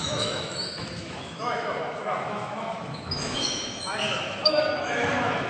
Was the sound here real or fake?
fake